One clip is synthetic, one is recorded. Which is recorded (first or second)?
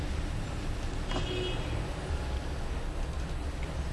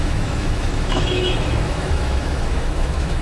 first